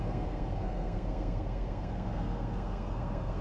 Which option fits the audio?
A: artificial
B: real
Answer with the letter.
A